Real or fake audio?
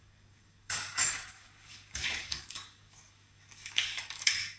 fake